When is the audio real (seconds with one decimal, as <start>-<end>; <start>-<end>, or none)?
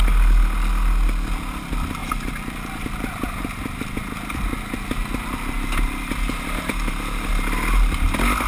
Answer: 0.0-8.5